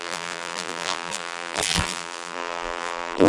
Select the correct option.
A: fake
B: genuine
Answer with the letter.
A